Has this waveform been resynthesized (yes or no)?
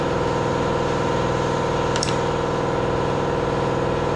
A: no